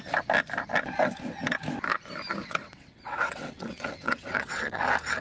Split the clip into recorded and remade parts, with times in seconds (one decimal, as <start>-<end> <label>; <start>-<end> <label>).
0.0-2.4 recorded; 2.4-4.8 remade; 4.8-5.2 recorded